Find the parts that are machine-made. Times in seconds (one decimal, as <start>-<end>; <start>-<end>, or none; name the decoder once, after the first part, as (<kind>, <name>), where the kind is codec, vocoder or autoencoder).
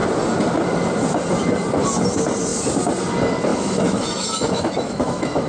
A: 3.5-5.5 (autoencoder, DAC-VAE)